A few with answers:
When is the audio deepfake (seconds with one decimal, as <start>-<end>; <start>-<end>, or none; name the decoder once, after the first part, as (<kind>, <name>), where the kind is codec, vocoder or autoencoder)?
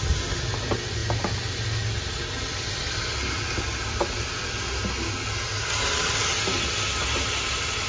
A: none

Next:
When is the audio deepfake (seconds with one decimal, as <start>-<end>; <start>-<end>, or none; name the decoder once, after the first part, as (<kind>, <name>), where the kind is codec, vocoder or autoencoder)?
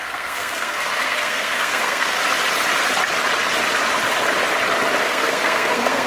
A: 0.0-2.2 (codec, SNAC); 5.0-6.1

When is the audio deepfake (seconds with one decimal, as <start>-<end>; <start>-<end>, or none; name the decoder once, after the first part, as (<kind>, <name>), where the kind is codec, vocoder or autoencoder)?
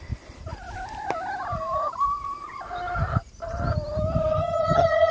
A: 4.3-5.1 (vocoder, HiFi-GAN)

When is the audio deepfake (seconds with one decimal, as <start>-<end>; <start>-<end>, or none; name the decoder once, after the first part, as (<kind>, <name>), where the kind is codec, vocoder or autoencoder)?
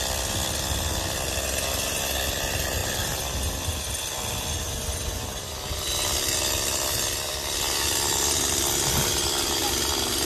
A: none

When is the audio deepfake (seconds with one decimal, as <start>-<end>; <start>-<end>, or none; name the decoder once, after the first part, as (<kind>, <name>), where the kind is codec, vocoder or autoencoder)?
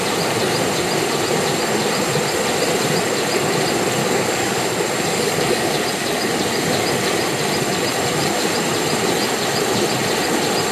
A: 4.0-4.6 (codec, DAC); 5.1-5.7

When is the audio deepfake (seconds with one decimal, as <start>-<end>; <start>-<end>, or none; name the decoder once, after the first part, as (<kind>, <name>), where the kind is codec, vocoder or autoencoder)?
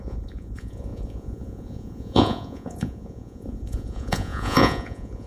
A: 0.0-5.3 (vocoder, Vocos)